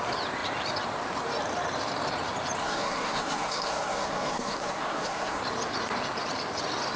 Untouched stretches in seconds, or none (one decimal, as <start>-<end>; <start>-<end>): 0.0-2.6; 5.4-7.0